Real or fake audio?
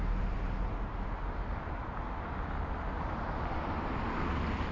real